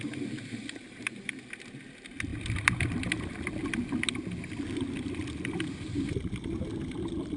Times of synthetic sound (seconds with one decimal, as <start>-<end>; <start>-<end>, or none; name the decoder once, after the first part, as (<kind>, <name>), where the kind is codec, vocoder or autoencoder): none

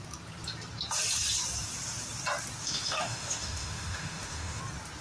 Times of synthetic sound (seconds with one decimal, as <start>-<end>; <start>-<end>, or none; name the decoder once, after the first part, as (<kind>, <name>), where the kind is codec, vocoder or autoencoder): 2.6-4.6 (autoencoder, DAC-VAE)

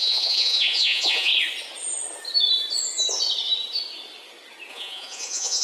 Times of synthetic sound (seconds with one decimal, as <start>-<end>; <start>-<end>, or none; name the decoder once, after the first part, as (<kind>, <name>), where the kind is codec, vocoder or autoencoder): 0.0-1.3 (vocoder, Vocos); 4.7-5.6